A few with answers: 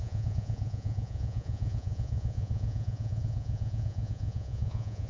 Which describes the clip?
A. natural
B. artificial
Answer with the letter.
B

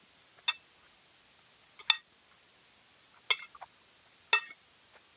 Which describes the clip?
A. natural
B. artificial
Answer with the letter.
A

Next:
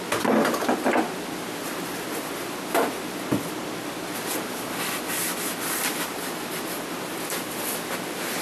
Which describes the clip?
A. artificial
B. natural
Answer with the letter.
B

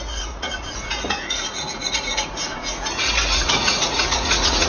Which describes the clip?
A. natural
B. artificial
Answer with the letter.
B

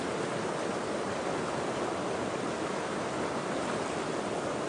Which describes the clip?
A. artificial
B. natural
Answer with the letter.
B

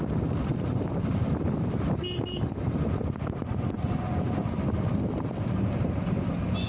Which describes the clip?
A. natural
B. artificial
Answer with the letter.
A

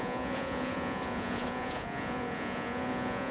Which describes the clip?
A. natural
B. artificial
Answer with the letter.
B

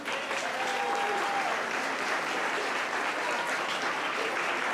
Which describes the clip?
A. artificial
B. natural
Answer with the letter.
B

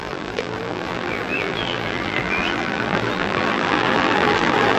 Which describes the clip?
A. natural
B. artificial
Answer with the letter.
B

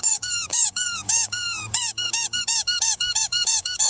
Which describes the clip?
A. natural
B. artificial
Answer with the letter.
B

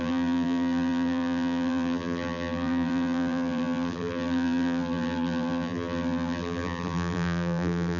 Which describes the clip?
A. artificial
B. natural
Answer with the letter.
A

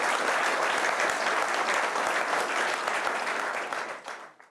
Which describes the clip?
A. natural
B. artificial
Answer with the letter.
A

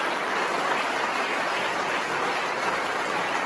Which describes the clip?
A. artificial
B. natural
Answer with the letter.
B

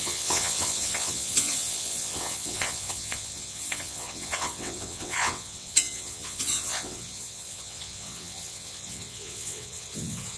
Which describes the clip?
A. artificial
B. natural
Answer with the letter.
A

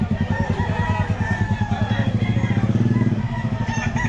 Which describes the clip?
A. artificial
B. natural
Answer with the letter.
B